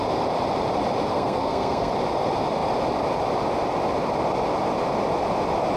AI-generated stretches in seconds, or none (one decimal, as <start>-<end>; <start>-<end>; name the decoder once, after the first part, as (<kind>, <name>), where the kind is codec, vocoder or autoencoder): 1.1-1.9 (codec, SNAC)